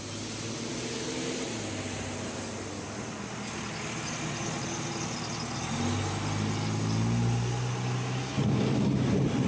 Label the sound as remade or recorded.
recorded